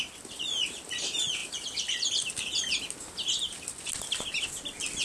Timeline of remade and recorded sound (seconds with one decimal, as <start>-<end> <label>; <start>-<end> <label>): 0.0-5.0 recorded